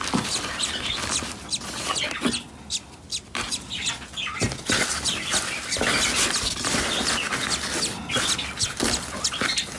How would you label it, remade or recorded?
recorded